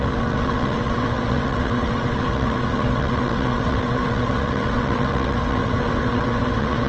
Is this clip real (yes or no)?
no